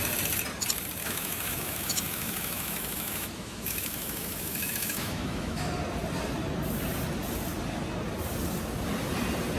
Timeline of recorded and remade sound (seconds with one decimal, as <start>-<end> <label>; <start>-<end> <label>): 0.0-1.0 recorded; 1.0-5.7 remade; 5.7-9.6 recorded